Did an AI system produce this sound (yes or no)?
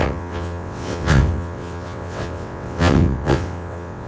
yes